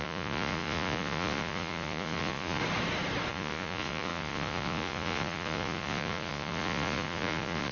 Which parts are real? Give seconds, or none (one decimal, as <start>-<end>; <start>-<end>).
2.6-3.3